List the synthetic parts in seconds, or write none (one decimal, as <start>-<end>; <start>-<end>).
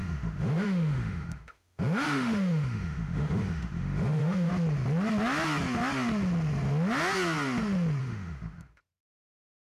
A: 0.0-4.5; 8.0-8.8